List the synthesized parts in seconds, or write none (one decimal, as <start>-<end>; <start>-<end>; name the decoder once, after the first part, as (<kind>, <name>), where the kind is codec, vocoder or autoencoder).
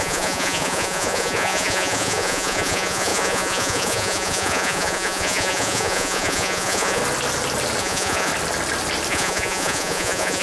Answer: 0.0-7.0 (vocoder, Vocos); 7.8-8.3; 9.1-10.4